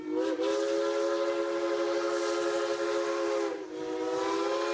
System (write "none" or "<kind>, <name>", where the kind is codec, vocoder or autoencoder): none